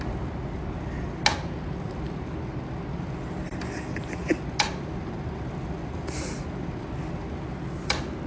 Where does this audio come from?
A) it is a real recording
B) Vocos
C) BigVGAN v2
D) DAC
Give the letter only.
A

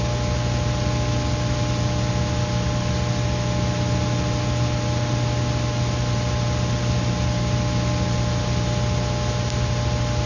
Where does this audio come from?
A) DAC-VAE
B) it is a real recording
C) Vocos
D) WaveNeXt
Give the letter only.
B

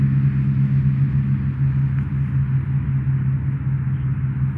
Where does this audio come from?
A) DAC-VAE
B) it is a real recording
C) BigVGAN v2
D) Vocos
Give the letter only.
B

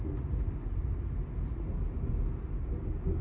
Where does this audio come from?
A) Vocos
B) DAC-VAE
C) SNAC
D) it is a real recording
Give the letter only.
D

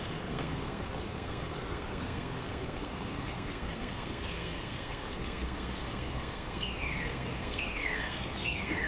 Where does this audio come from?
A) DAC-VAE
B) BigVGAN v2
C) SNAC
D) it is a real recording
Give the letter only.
C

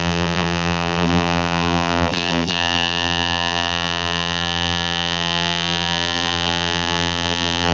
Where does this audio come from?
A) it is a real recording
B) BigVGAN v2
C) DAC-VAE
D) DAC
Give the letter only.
B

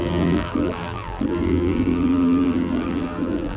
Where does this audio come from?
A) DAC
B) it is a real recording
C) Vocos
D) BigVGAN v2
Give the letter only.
D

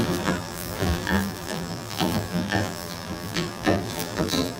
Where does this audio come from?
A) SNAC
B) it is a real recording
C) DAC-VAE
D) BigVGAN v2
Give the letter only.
D